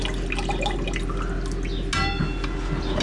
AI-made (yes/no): no